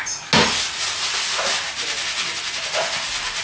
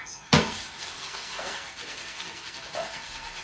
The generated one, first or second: second